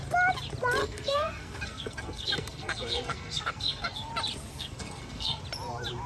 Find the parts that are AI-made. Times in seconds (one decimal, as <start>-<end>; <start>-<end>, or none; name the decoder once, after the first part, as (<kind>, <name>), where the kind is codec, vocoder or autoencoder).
0.8-4.1 (codec, SNAC); 4.5-5.4

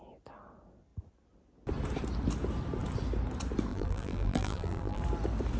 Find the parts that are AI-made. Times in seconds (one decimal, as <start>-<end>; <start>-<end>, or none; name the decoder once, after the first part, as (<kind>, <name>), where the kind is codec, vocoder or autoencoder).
3.7-5.0 (vocoder, BigVGAN v2)